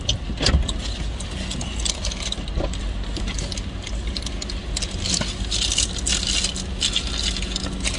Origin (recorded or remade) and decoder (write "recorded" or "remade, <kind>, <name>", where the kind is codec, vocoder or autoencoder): recorded